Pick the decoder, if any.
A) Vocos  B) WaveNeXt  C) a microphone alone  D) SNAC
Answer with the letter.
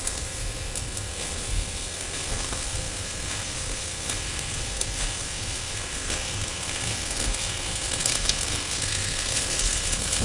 D